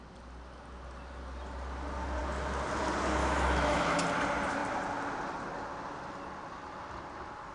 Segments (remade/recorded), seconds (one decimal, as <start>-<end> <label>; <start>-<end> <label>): 0.0-3.2 recorded; 3.2-4.0 remade; 4.0-7.5 recorded